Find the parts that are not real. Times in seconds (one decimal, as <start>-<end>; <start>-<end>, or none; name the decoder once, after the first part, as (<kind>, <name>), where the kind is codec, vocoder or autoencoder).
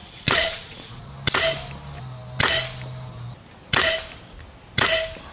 0.0-1.1 (vocoder, Vocos)